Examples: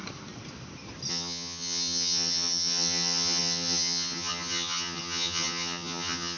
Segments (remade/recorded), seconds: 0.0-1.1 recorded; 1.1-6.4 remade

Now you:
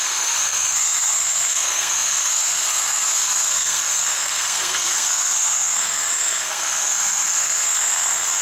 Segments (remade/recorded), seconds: 0.0-8.4 remade

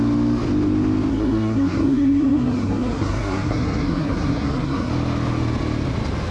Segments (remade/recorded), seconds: 0.0-1.1 recorded; 1.1-4.9 remade; 4.9-6.3 recorded

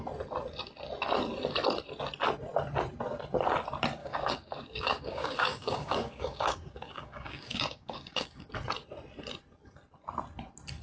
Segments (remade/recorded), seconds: 0.0-4.0 recorded; 4.0-8.5 remade; 8.5-10.8 recorded

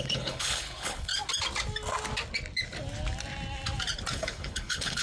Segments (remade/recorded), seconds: 0.0-1.1 remade; 1.1-4.1 recorded; 4.1-5.0 remade

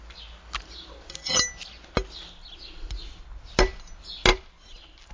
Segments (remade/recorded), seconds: 0.0-5.1 recorded

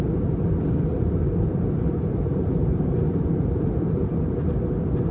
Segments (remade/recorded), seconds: 0.0-0.9 recorded; 0.9-4.0 remade; 4.0-5.1 recorded